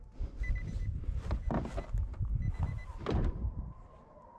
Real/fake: real